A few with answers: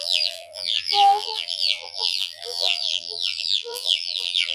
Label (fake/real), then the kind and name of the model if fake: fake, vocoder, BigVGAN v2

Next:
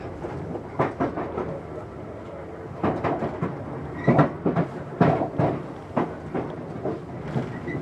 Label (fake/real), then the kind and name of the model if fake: real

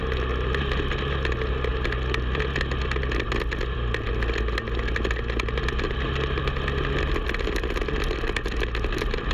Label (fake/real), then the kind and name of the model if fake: real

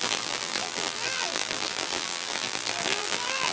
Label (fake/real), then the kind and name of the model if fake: fake, vocoder, BigVGAN v2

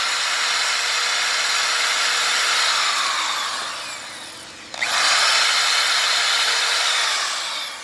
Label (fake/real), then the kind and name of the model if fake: real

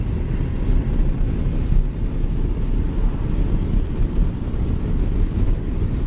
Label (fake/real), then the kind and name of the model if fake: real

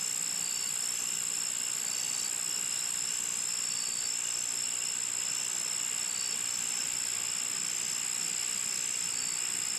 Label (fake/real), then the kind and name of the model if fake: real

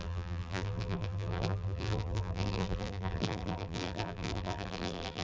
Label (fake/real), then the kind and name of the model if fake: fake, vocoder, BigVGAN v2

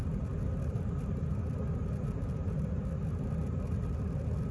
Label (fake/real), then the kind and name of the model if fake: real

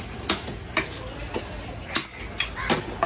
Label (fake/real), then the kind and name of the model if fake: real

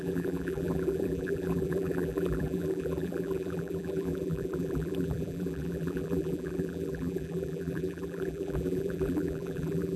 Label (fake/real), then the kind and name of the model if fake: fake, vocoder, BigVGAN v2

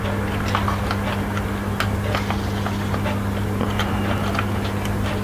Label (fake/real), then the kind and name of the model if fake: real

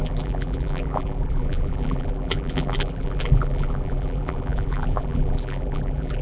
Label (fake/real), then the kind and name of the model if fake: fake, vocoder, BigVGAN v2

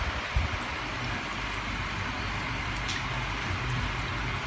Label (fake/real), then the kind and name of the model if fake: real